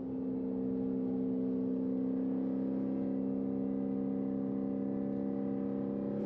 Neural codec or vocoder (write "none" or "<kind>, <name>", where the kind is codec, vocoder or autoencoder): none